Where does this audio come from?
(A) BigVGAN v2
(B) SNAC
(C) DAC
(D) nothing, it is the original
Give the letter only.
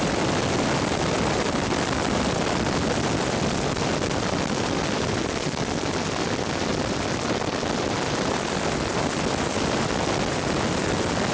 A